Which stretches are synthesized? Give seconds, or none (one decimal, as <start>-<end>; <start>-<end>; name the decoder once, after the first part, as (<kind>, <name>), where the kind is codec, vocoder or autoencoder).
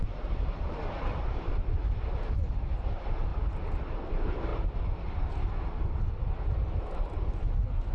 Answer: 0.0-1.8 (vocoder, BigVGAN v2); 2.5-3.3; 4.1-4.5; 7.5-7.9